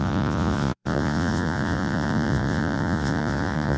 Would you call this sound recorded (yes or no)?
no